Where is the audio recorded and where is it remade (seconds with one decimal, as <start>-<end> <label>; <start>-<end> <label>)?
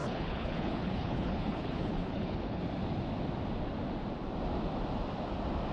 0.0-2.6 remade; 2.6-5.7 recorded